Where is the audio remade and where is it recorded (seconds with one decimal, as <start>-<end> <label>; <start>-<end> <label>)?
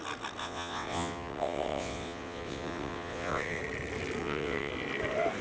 0.0-0.4 recorded; 0.4-3.6 remade; 3.6-4.2 recorded; 4.2-4.7 remade; 4.7-5.4 recorded